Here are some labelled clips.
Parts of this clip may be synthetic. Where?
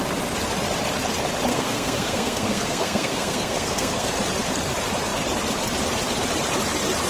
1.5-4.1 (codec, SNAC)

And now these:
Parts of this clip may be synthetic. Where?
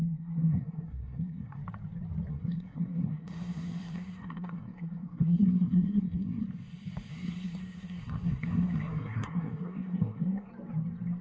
0.0-1.6 (codec, SNAC); 2.3-6.4; 7.1-10.5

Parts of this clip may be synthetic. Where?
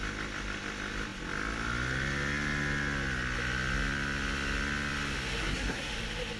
5.4-5.9 (codec, SNAC)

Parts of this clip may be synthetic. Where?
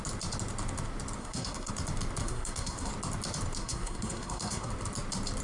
1.2-1.7 (codec, SNAC); 2.2-2.9; 3.6-4.7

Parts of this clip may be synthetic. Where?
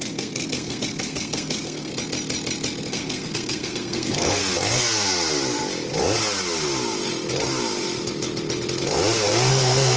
0.0-1.9 (codec, SNAC); 2.9-4.4; 9.5-10.0